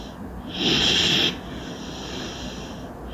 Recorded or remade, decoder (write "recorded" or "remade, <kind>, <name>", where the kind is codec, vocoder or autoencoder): recorded